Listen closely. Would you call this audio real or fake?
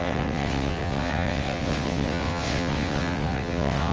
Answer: fake